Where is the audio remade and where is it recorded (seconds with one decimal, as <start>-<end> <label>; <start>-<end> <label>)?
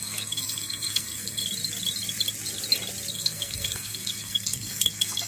0.0-1.4 remade; 1.4-3.1 recorded; 3.1-5.3 remade